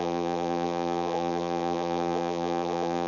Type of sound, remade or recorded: remade